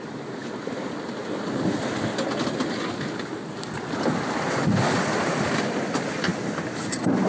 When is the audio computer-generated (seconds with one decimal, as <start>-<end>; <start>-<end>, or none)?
none